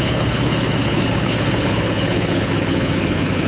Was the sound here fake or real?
fake